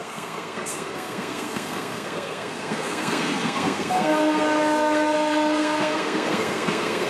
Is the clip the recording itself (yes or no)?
no